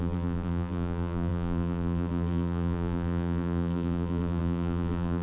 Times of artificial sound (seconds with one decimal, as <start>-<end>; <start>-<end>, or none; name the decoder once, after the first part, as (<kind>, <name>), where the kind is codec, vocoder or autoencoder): 0.0-5.2 (vocoder, BigVGAN v2)